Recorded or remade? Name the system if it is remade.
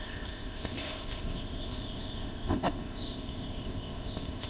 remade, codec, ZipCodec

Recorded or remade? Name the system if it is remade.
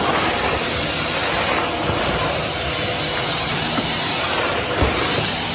recorded